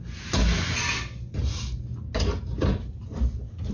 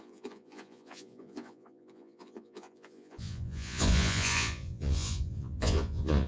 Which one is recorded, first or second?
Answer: first